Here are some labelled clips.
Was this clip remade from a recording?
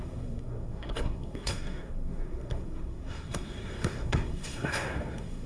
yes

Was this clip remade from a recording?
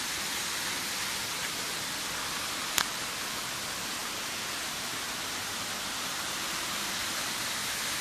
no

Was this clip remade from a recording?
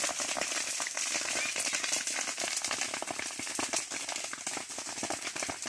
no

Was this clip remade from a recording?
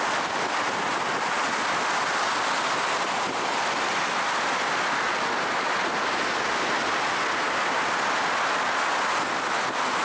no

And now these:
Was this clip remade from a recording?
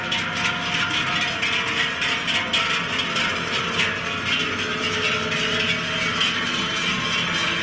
no